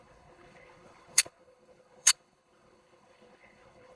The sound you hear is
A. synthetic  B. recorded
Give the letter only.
A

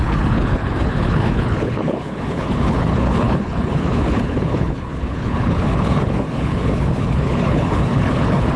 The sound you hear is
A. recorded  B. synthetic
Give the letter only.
B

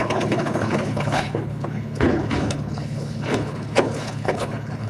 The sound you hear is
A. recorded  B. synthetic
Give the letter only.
B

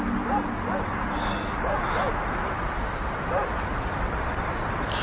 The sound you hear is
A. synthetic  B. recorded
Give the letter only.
B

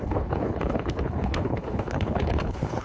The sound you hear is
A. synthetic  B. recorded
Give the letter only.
A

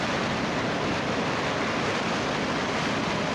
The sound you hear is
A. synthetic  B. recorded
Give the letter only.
B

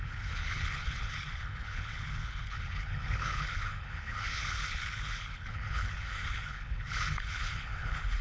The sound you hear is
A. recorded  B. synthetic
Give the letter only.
B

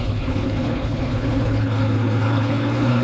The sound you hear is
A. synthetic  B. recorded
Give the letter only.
A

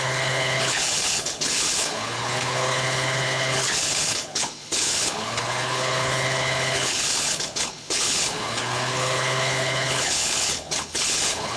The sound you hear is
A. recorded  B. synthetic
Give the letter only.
B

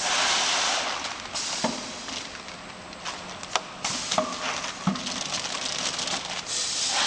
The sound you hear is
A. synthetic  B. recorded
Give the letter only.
B